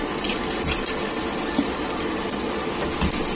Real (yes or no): yes